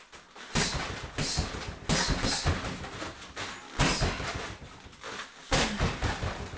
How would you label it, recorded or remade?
recorded